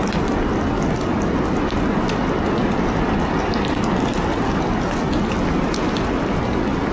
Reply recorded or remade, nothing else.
recorded